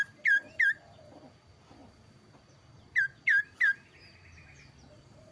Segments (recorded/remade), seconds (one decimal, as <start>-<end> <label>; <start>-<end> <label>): 0.0-5.3 recorded